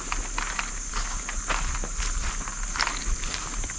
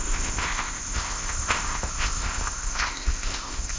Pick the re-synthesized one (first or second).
second